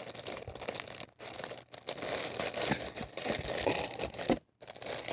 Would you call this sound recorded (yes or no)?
yes